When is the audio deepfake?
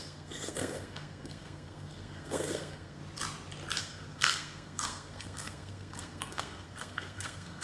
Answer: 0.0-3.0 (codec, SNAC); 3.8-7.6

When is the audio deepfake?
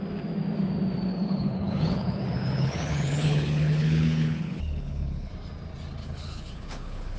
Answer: 1.1-5.3 (codec, HILCodec); 6.0-7.2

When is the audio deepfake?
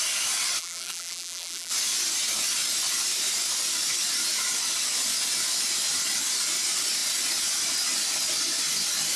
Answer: 0.6-1.7 (vocoder, BigVGAN v2)